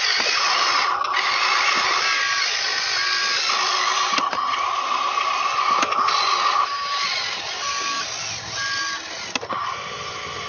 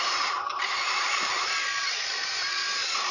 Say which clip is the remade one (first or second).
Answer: second